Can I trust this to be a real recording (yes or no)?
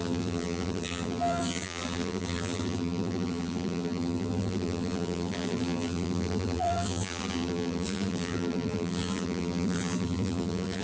no